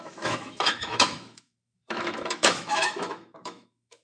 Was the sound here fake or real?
fake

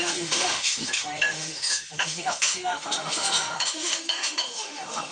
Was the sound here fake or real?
fake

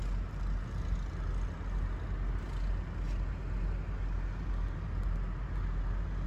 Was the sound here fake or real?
real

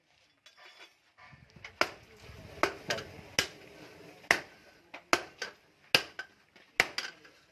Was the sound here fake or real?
real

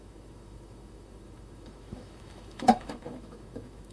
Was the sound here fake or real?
fake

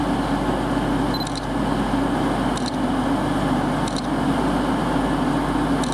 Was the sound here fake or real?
real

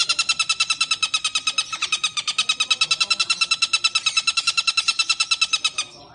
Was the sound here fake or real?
real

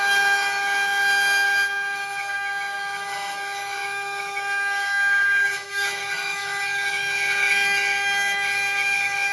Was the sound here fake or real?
fake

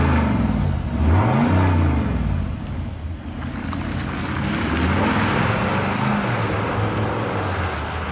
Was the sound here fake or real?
real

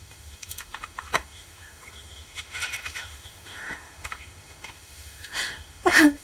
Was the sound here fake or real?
fake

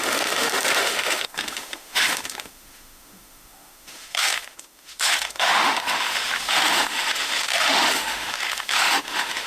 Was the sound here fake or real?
fake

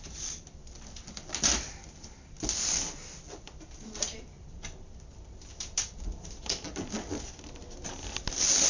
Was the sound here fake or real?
real